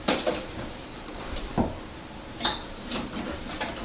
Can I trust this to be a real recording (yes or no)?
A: no